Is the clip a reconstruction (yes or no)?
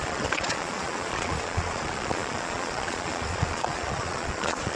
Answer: yes